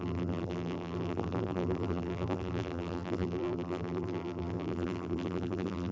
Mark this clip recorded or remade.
remade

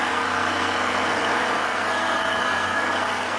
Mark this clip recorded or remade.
remade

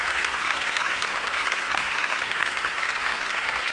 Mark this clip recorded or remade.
remade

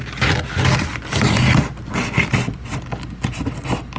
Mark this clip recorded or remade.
recorded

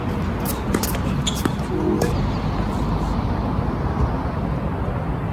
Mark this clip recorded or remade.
recorded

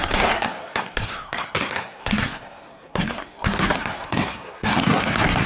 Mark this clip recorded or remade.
remade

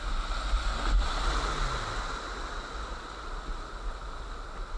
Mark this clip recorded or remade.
recorded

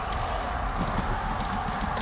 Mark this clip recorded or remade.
recorded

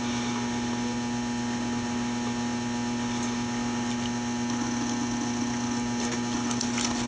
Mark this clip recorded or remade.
recorded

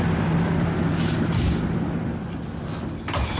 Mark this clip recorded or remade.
recorded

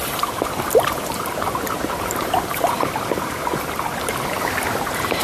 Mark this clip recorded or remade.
remade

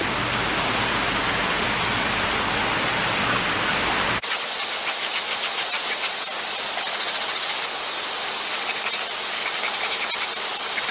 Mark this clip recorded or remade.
recorded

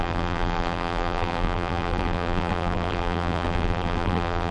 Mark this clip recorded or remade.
remade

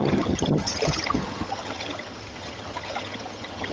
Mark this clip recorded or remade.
remade